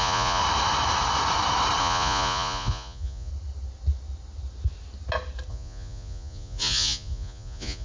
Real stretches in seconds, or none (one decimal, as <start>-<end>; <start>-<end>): 0.4-1.8; 3.3-5.5